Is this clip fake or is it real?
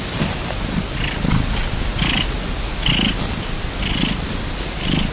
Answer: real